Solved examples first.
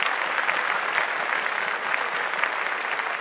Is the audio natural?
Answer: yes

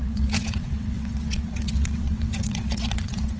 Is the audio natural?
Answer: no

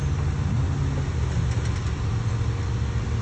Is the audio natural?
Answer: yes